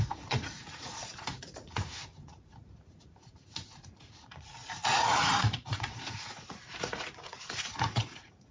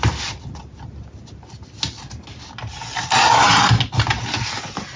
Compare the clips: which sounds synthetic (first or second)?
first